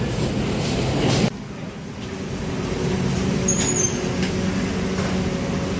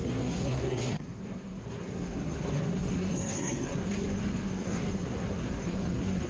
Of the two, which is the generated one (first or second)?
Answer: second